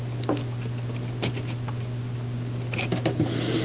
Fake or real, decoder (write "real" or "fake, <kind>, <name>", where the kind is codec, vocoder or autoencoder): real